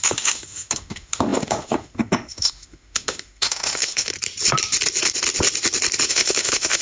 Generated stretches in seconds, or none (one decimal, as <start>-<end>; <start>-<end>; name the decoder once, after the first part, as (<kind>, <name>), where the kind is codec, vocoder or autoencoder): 0.0-4.1 (autoencoder, DAC-VAE); 6.1-6.8